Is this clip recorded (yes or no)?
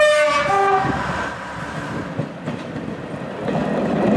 yes